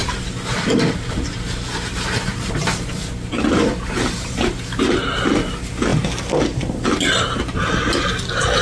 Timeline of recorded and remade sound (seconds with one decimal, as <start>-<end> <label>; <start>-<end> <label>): 0.0-4.9 remade; 4.9-8.6 recorded